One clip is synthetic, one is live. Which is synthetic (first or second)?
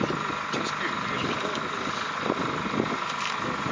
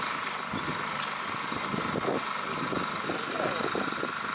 second